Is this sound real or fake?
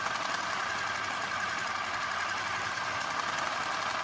real